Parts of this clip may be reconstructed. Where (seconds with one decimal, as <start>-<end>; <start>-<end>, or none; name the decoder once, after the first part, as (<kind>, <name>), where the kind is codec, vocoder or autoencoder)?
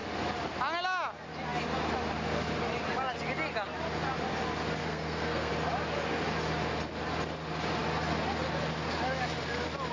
4.8-5.5 (codec, SNAC)